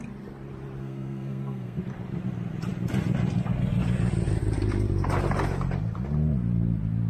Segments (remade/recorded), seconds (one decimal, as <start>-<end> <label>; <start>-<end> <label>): 0.0-0.8 recorded; 0.8-1.8 remade; 1.8-7.1 recorded